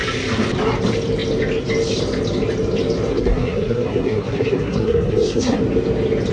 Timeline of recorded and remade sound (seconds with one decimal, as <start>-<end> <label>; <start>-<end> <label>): 0.0-3.1 recorded; 3.1-5.6 remade; 5.6-6.3 recorded